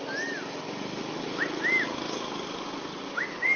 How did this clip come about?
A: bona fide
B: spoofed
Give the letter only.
A